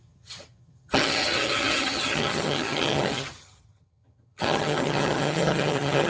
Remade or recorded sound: remade